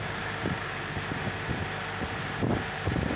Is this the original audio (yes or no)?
yes